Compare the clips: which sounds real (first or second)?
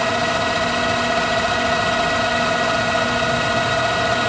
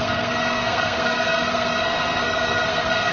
first